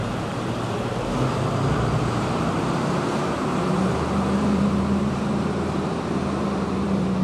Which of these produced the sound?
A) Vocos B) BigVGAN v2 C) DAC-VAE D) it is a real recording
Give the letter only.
B